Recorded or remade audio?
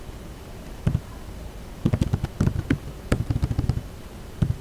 recorded